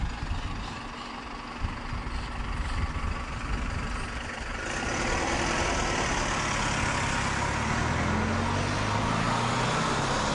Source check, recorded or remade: recorded